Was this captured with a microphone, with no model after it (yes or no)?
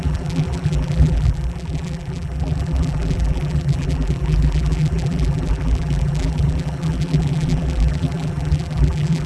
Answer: no